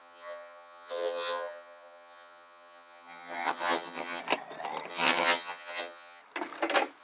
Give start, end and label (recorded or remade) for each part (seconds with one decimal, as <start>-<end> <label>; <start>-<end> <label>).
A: 0.0-4.2 remade; 4.2-4.9 recorded; 4.9-6.2 remade; 6.2-7.0 recorded